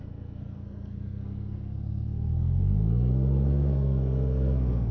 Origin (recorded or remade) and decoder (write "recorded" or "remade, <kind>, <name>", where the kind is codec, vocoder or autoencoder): remade, codec, SNAC